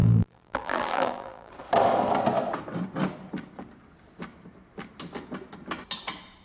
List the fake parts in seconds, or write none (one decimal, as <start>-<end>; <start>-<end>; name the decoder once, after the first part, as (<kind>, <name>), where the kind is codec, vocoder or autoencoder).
0.0-1.5 (vocoder, BigVGAN v2)